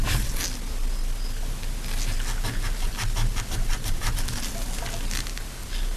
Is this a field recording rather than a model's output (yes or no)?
yes